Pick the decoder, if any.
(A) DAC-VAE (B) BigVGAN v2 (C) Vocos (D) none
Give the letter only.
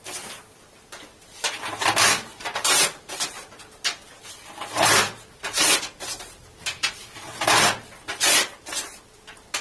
B